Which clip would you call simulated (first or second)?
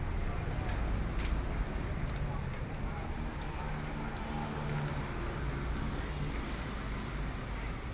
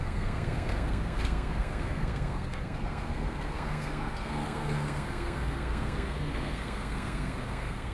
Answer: second